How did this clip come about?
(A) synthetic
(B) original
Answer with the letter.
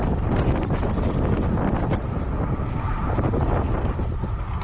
B